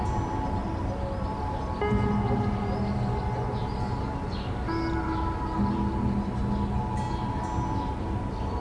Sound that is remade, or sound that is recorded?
recorded